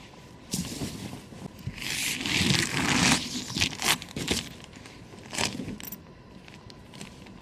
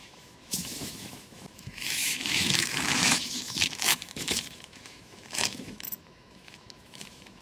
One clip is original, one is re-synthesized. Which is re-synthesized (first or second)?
second